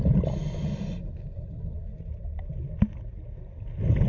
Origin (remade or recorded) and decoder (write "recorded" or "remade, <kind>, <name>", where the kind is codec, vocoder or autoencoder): recorded